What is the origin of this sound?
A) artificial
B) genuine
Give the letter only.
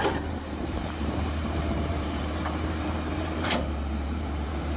A